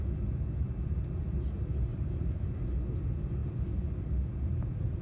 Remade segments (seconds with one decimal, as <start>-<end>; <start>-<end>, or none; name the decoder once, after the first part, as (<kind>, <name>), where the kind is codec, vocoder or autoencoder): 1.9-2.4 (vocoder, BigVGAN v2)